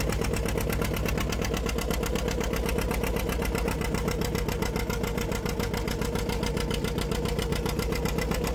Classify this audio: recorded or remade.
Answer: recorded